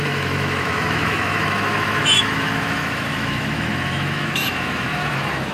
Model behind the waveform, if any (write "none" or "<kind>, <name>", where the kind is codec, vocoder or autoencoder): autoencoder, DAC-VAE